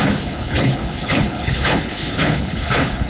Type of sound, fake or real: fake